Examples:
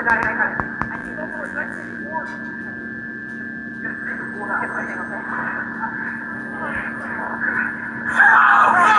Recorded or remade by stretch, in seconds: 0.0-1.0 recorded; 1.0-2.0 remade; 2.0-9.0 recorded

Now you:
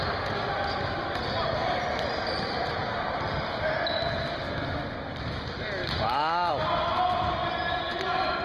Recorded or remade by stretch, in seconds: 0.0-8.4 recorded